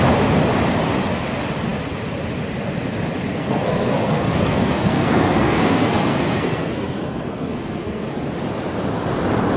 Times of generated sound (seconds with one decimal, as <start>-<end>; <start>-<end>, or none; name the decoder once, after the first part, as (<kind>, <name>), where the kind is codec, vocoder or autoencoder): 3.3-8.3 (codec, SNAC)